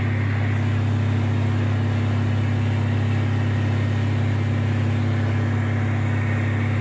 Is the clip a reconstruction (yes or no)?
no